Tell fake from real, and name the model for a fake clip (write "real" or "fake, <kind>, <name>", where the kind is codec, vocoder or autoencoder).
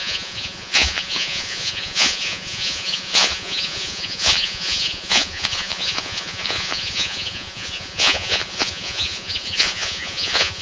fake, vocoder, Vocos